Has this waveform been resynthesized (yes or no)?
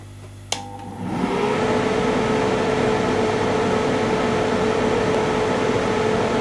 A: no